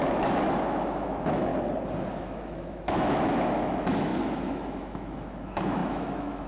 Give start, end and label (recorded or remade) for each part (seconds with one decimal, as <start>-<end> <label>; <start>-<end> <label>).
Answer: 0.0-1.5 remade; 1.5-2.1 recorded; 2.1-6.5 remade